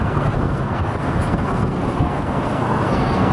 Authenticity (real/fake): fake